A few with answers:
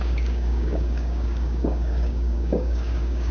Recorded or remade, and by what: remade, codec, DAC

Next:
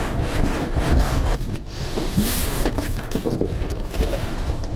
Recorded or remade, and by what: remade, codec, DAC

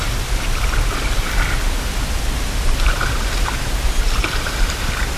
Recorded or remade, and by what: remade, vocoder, BigVGAN v2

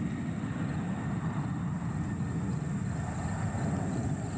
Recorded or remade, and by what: recorded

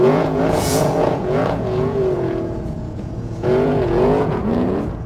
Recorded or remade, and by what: remade, vocoder, Vocos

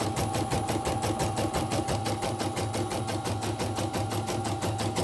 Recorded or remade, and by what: recorded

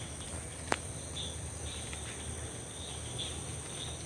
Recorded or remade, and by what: recorded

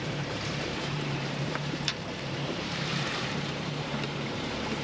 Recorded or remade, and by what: remade, vocoder, BigVGAN v2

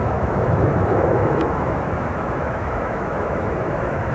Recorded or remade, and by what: remade, autoencoder, DAC-VAE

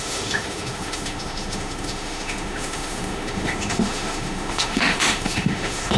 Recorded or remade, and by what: remade, autoencoder, DAC-VAE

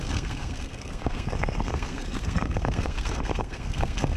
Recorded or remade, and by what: remade, codec, SNAC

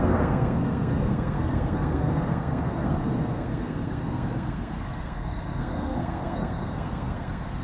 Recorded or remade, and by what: remade, codec, SNAC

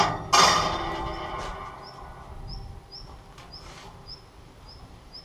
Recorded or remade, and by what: recorded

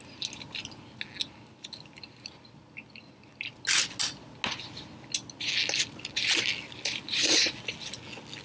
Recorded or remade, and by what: recorded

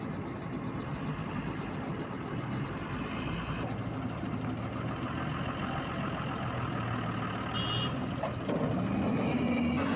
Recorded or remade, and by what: recorded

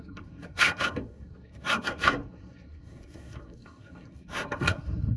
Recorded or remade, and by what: remade, codec, SNAC